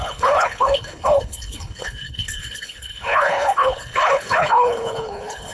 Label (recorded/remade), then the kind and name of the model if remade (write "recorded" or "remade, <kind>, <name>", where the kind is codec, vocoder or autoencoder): remade, codec, HILCodec